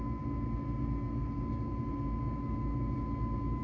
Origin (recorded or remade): remade